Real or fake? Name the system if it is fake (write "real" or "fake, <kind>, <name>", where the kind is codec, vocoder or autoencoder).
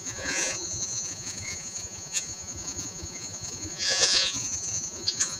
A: fake, vocoder, Vocos